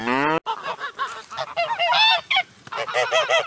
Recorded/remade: recorded